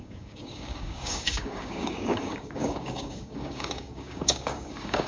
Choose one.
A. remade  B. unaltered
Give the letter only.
A